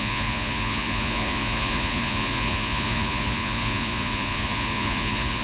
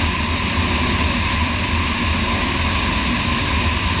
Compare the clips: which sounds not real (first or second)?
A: first